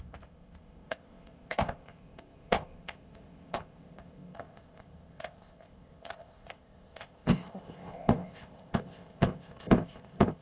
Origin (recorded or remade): remade